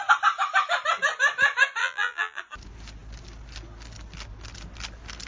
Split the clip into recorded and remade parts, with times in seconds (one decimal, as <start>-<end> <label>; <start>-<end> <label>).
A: 0.0-1.8 recorded; 1.8-2.4 remade; 2.4-5.3 recorded